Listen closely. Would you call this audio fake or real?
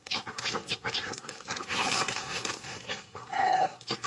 fake